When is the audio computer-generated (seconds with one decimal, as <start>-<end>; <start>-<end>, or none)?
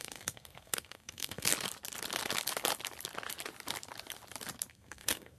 0.0-1.5; 4.7-5.4